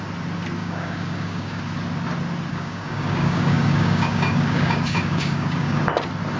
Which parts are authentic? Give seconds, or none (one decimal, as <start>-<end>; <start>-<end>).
0.0-0.6; 1.6-2.5; 5.8-6.4